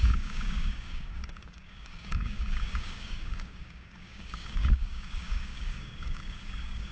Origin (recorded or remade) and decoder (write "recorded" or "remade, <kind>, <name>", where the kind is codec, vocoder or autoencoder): remade, codec, DAC